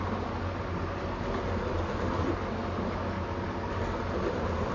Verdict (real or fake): real